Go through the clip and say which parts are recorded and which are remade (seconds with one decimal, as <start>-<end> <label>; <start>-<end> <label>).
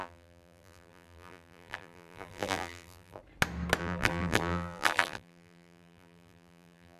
0.0-3.2 remade; 3.2-3.8 recorded; 3.8-7.0 remade